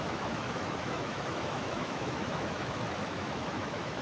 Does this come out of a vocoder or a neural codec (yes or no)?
yes